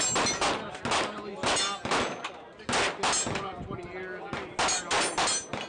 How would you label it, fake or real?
real